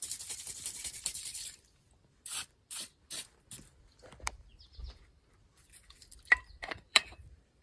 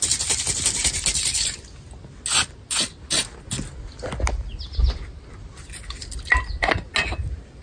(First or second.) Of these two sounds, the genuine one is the second